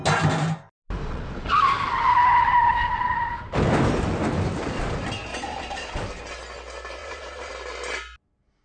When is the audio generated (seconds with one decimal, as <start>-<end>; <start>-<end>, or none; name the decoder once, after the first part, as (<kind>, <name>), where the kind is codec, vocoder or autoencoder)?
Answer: 1.0-1.6 (vocoder, Vocos); 5.3-6.0; 7.0-7.5